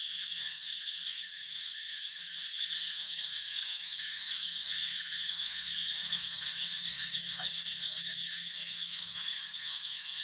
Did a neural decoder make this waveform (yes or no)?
yes